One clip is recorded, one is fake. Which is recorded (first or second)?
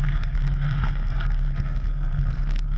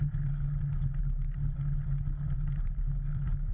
second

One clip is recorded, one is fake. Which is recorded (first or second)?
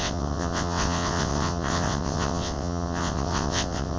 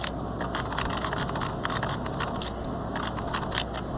second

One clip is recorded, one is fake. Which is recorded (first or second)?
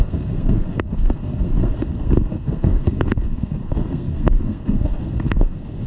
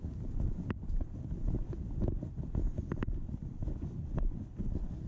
second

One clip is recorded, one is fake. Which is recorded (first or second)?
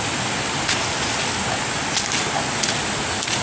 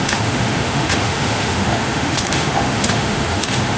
first